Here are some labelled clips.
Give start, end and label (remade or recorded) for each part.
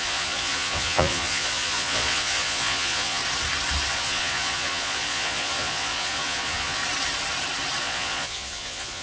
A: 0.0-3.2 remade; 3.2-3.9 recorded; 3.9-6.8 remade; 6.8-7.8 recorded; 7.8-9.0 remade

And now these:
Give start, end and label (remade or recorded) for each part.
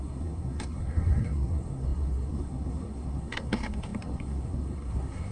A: 0.0-5.3 remade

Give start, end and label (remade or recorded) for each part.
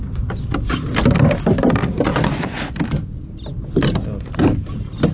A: 0.0-2.1 recorded; 2.1-2.7 remade; 2.7-5.1 recorded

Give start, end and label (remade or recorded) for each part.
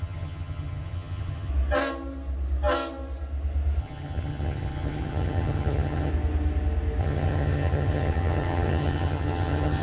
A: 0.0-1.5 remade; 1.5-3.8 recorded; 3.8-6.1 remade; 6.1-7.0 recorded; 7.0-9.8 remade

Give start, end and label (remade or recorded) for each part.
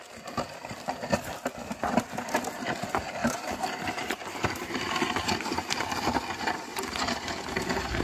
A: 0.0-3.2 recorded; 3.2-5.8 remade; 5.8-6.7 recorded; 6.7-7.3 remade; 7.3-8.0 recorded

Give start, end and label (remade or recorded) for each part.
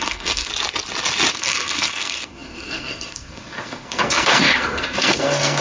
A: 0.0-0.5 remade; 0.5-1.3 recorded; 1.3-5.6 remade